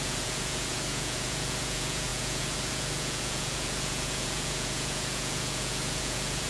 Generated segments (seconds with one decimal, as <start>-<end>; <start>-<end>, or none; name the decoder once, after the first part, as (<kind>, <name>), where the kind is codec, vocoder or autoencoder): 0.0-6.5 (vocoder, Vocos)